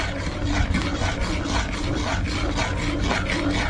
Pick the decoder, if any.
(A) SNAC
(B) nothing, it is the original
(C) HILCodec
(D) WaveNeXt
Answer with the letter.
B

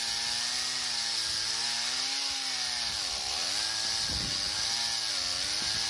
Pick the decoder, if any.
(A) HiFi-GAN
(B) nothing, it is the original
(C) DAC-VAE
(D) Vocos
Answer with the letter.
B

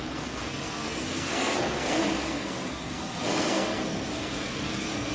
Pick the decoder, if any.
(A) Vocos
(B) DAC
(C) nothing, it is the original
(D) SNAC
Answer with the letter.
D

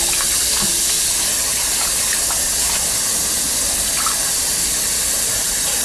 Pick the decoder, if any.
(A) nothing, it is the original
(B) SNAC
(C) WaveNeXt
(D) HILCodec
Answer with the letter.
A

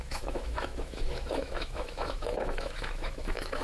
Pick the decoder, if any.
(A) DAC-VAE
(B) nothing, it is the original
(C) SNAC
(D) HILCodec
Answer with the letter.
A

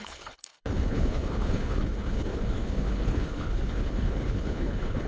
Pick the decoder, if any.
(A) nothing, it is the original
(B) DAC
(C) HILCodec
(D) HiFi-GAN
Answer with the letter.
C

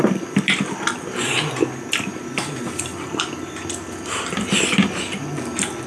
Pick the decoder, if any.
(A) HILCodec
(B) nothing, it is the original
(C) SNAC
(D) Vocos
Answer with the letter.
B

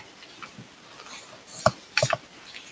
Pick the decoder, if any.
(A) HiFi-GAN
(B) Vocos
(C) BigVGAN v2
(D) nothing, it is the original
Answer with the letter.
D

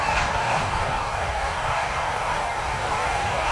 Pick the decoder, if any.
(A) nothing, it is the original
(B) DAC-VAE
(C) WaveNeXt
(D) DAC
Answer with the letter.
D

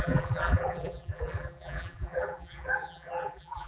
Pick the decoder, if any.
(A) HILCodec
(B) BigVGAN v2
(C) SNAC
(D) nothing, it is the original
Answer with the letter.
B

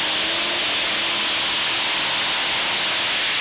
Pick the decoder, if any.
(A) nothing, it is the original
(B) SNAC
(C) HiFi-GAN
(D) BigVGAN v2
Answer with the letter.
A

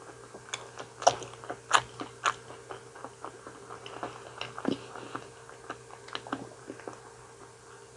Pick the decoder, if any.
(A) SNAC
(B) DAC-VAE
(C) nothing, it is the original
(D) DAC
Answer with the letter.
C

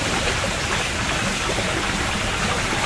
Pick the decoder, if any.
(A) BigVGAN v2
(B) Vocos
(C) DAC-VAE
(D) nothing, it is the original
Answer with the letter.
D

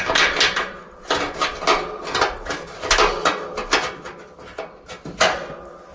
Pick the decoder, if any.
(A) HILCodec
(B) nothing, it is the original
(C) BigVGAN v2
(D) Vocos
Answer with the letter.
B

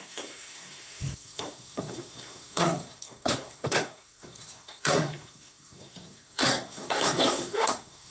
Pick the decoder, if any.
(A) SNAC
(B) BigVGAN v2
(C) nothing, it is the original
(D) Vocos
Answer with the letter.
A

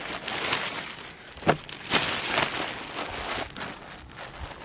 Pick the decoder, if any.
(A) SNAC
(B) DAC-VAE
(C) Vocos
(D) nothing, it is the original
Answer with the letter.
D